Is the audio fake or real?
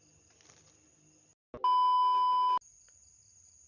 real